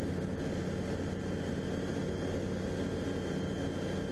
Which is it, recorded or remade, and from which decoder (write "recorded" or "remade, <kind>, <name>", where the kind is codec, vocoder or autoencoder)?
recorded